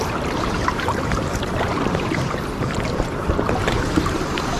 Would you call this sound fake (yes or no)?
yes